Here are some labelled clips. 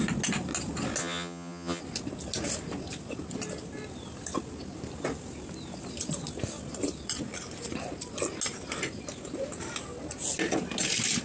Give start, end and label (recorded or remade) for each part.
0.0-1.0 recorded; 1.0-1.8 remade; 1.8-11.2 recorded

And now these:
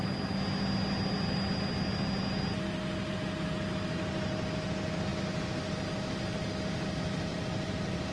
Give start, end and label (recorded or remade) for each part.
0.0-7.3 recorded; 7.3-8.1 remade

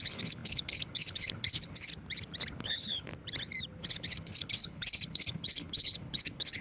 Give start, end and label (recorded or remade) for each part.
0.0-1.9 remade; 1.9-2.5 recorded; 2.5-3.1 remade; 3.1-3.8 recorded; 3.8-6.6 remade

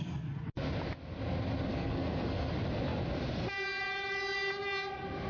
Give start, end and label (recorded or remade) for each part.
0.0-1.7 recorded; 1.7-2.5 remade; 2.5-5.3 recorded

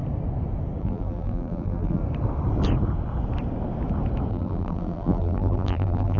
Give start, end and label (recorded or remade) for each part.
0.0-0.8 recorded; 0.8-2.0 remade; 2.0-4.3 recorded; 4.3-6.2 remade

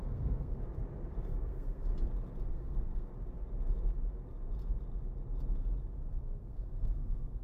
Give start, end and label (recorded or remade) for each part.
0.0-0.6 remade; 0.6-1.3 recorded; 1.3-1.9 remade; 1.9-2.5 recorded; 2.5-3.1 remade; 3.1-6.2 recorded; 6.2-7.4 remade

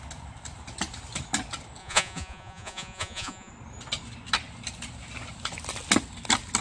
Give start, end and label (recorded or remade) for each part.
0.0-1.8 recorded; 1.8-3.5 remade; 3.5-6.6 recorded

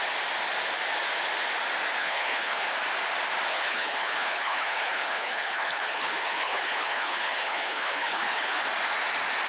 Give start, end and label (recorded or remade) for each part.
0.0-2.0 recorded; 2.0-2.7 remade; 2.7-3.5 recorded; 3.5-8.6 remade; 8.6-9.5 recorded